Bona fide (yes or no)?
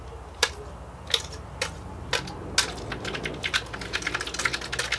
yes